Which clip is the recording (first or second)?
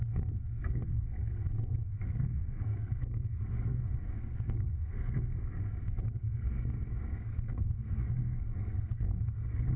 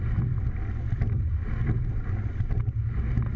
second